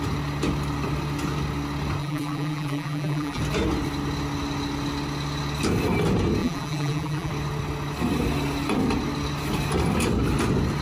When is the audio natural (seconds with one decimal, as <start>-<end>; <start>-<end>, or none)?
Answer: 0.0-2.0; 3.4-6.4; 7.3-10.8